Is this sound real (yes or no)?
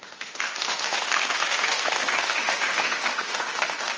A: no